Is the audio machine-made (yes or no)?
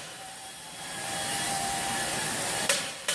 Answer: yes